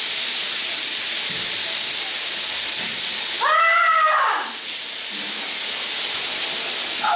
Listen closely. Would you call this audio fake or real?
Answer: real